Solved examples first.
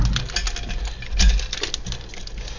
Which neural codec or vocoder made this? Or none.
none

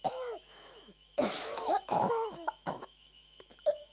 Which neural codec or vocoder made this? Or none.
autoencoder, DAC-VAE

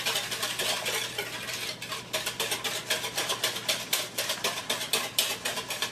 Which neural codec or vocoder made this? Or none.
none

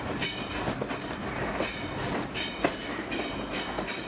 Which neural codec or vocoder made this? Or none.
none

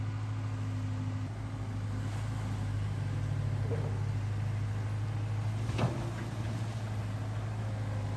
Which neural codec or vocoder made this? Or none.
none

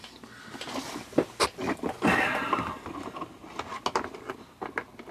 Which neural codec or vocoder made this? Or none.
none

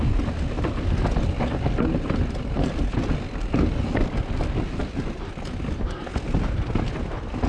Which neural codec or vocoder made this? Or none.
none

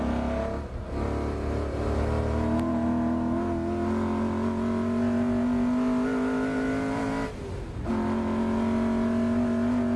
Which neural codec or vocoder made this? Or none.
none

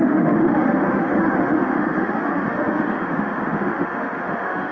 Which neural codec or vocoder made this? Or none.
autoencoder, DAC-VAE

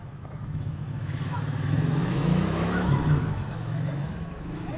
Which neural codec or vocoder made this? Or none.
autoencoder, DAC-VAE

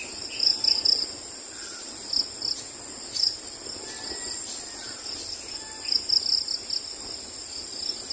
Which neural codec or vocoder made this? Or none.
none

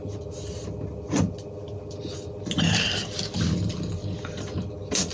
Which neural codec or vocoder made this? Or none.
none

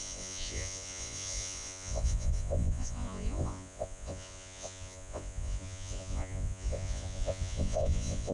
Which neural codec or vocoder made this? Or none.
vocoder, Vocos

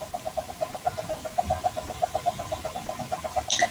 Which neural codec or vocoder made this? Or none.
none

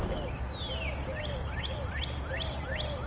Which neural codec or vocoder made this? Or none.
none